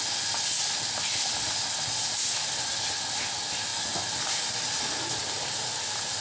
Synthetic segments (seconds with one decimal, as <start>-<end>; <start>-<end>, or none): none